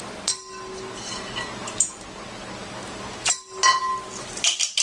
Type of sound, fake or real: real